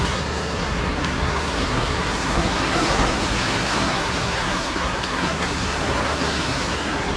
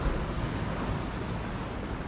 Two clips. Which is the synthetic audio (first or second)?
first